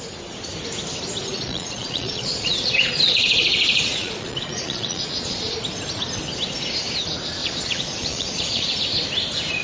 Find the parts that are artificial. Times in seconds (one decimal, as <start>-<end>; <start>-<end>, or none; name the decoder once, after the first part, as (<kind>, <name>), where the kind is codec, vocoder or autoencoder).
1.3-5.6 (vocoder, Vocos); 7.4-8.8